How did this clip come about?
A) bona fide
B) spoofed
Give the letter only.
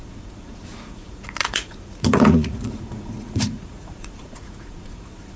B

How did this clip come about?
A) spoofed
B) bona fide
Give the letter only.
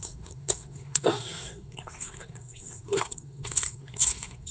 A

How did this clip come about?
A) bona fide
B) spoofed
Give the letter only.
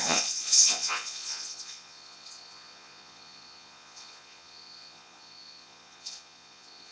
B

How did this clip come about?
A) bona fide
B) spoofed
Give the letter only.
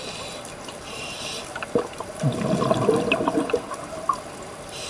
A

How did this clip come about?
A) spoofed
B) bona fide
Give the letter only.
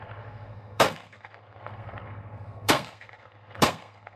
A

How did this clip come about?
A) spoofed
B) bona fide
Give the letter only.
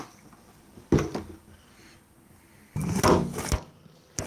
B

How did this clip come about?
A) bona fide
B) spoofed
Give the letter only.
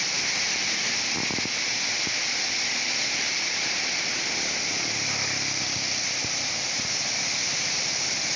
A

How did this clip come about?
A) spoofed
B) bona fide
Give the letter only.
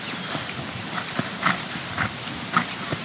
B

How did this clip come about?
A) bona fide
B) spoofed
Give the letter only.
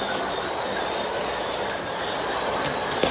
A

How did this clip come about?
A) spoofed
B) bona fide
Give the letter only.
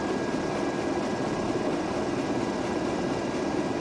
B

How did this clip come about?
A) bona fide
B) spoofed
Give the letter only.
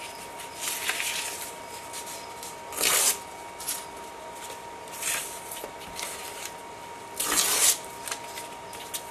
A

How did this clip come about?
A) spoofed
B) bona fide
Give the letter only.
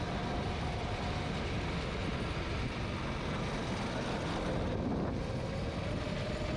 B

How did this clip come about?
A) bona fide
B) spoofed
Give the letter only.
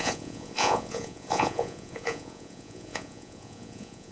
B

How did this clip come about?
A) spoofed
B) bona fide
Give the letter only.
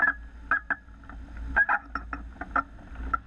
B